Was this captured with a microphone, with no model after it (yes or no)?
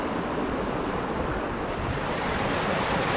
yes